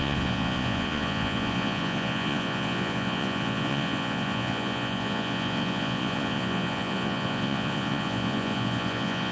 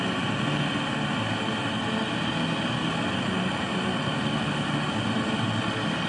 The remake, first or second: first